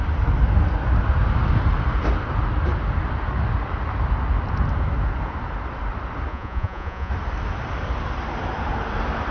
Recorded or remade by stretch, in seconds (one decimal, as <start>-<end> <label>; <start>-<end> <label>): 0.0-6.3 recorded; 6.3-7.1 remade; 7.1-9.3 recorded

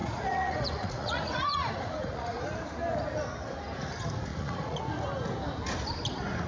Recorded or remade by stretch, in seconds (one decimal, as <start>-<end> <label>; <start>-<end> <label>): 0.0-2.4 remade; 2.4-4.3 recorded; 4.3-4.8 remade; 4.8-6.5 recorded

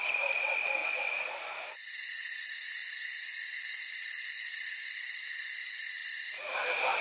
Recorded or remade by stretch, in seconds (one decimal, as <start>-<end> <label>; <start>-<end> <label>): 0.0-0.8 recorded; 0.8-1.9 remade; 1.9-7.0 recorded

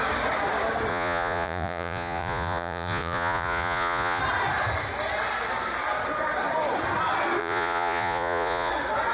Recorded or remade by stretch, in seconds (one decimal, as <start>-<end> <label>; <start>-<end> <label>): 0.0-0.9 recorded; 0.9-4.2 remade; 4.2-7.4 recorded; 7.4-8.7 remade; 8.7-9.1 recorded

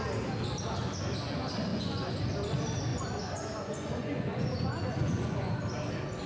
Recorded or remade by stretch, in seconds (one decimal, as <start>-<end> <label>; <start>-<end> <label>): 0.0-1.7 recorded; 1.7-2.2 remade; 2.2-2.9 recorded; 2.9-5.5 remade; 5.5-6.3 recorded

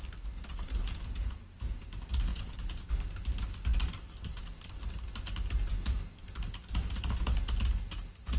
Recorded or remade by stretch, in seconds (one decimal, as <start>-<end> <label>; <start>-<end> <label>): 0.0-0.5 recorded; 0.5-1.8 remade; 1.8-2.3 recorded; 2.3-2.9 remade; 2.9-8.4 recorded

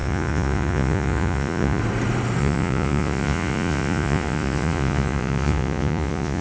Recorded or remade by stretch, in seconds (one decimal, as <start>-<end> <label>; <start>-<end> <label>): 0.0-1.8 remade; 1.8-2.4 recorded; 2.4-6.4 remade

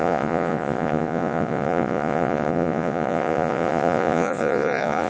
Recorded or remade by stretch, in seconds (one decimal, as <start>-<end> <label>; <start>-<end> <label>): 0.0-5.1 remade